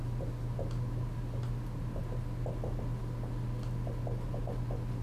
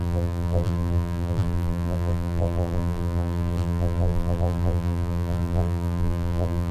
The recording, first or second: first